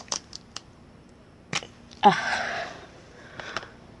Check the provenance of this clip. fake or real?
fake